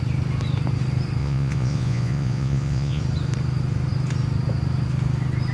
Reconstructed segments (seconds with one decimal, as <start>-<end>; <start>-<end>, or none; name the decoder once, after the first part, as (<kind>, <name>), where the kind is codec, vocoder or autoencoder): 1.2-3.0 (vocoder, Vocos)

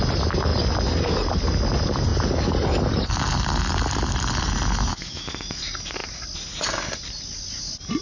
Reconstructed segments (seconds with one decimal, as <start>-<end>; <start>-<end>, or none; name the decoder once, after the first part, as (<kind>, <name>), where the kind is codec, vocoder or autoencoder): 4.9-5.6 (autoencoder, DAC-VAE)

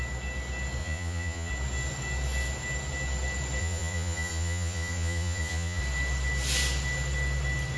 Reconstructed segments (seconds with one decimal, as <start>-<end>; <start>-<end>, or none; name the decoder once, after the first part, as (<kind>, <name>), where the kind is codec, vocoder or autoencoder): 0.8-1.5 (vocoder, Vocos); 3.6-5.8

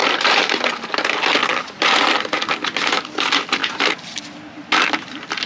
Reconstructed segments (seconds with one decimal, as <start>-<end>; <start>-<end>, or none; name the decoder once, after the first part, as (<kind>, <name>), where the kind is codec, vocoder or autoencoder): 0.0-0.6 (vocoder, BigVGAN v2)

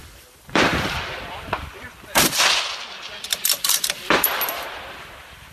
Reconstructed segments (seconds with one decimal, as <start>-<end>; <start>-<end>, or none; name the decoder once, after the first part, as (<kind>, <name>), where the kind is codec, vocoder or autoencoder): 0.0-5.5 (vocoder, BigVGAN v2)